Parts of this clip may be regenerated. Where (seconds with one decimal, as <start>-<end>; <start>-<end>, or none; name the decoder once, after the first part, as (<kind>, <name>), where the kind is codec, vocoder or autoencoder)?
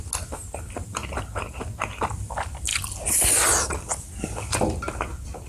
none